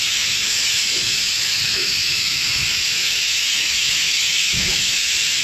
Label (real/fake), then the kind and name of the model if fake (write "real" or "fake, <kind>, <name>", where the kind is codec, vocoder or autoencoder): fake, autoencoder, DAC-VAE